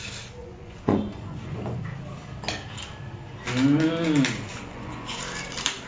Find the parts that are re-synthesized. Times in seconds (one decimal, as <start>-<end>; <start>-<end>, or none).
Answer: 0.4-1.8; 4.5-5.2